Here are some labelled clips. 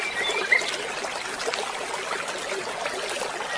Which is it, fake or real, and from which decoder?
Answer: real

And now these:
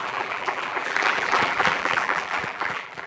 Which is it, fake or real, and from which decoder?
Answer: fake, vocoder, BigVGAN v2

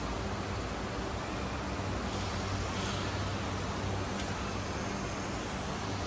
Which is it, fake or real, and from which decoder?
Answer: real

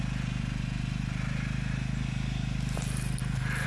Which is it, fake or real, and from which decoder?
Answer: real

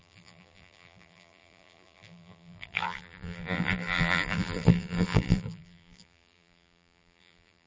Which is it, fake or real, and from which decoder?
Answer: fake, vocoder, BigVGAN v2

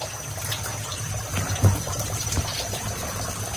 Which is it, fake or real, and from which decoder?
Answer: fake, vocoder, BigVGAN v2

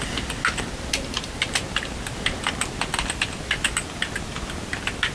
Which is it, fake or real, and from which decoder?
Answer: real